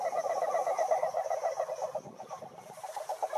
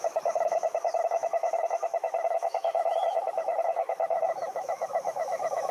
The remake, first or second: second